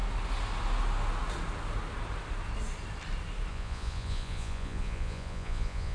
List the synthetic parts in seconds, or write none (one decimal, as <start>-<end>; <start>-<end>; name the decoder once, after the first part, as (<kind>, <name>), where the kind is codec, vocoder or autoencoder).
3.5-5.9 (vocoder, Vocos)